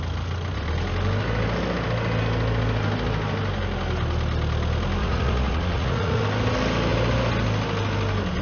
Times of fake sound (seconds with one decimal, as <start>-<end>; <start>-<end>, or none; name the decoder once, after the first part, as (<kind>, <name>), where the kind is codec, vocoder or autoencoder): 5.0-6.2 (vocoder, Vocos)